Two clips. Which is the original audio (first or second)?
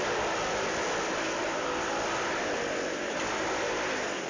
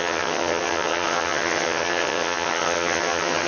first